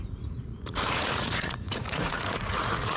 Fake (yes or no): yes